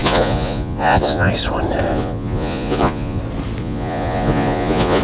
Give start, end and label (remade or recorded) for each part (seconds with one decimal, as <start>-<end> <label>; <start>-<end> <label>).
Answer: 0.0-1.3 remade; 1.3-1.9 recorded; 1.9-3.2 remade; 3.2-3.6 recorded; 3.6-5.0 remade